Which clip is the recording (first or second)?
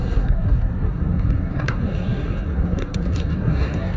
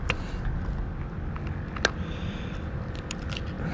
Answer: second